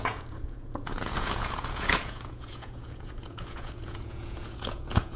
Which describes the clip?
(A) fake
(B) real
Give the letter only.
A